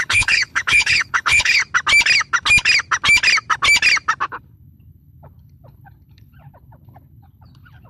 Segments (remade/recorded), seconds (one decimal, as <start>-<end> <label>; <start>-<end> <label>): 0.0-1.6 remade; 1.6-4.3 recorded; 4.3-7.9 remade